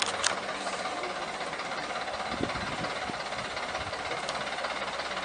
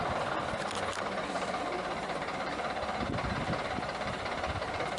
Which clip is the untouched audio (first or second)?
first